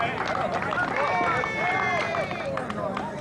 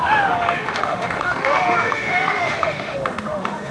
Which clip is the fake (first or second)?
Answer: second